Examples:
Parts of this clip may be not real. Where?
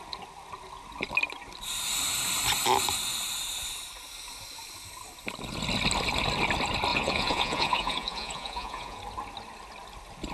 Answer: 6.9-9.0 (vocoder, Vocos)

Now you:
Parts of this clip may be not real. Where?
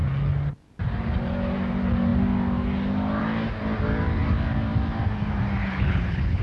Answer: 5.6-6.4 (codec, HILCodec)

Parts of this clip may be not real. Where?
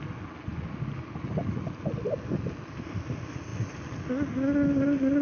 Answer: none